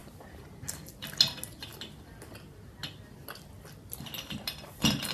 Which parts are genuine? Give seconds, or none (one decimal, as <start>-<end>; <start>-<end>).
0.0-5.1

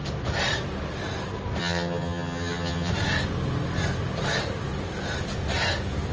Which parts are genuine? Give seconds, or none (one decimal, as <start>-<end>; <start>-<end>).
0.0-1.6; 2.9-6.1

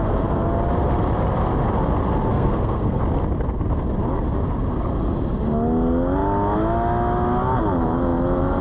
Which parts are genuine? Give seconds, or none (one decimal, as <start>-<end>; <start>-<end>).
0.0-2.3; 3.0-8.6